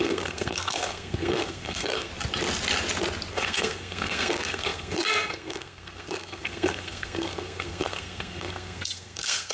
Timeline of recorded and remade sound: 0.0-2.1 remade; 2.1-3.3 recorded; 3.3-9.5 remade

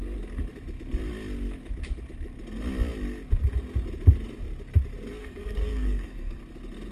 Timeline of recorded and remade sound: 0.0-5.2 recorded; 5.2-6.4 remade; 6.4-6.9 recorded

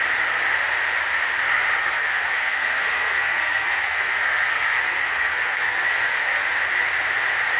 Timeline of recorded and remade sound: 0.0-1.8 recorded; 1.8-6.4 remade; 6.4-7.6 recorded

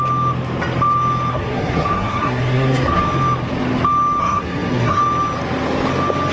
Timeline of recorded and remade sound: 0.0-1.3 recorded; 1.3-3.0 remade; 3.0-4.2 recorded; 4.2-5.0 remade; 5.0-6.3 recorded

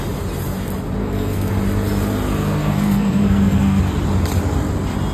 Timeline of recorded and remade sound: 0.0-1.0 recorded; 1.0-1.5 remade; 1.5-2.4 recorded; 2.4-3.8 remade; 3.8-5.1 recorded

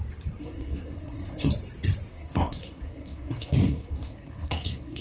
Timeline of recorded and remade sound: 0.0-0.4 recorded; 0.4-1.5 remade; 1.5-2.1 recorded; 2.1-5.0 remade